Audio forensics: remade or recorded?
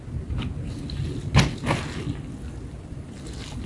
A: recorded